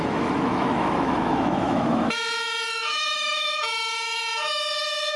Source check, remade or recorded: remade